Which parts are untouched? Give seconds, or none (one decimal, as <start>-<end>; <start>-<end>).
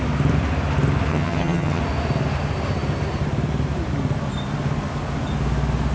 0.0-1.1; 1.8-5.9